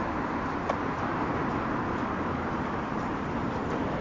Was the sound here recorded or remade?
recorded